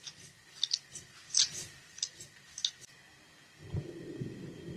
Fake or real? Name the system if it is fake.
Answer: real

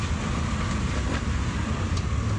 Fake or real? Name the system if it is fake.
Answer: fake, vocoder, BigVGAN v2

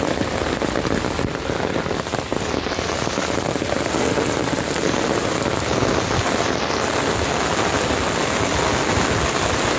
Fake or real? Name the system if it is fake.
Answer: real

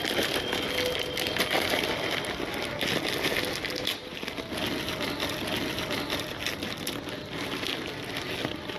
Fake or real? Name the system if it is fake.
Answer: real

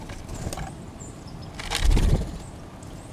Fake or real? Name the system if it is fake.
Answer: real